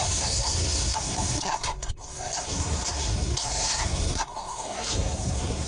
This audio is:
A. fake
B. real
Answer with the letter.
A